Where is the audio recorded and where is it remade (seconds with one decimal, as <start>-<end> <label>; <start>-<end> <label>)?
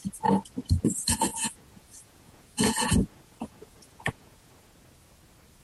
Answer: 0.0-1.3 recorded; 1.3-4.7 remade; 4.7-5.6 recorded